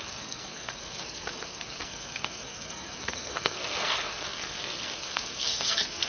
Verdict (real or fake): fake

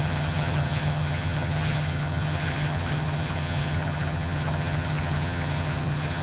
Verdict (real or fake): fake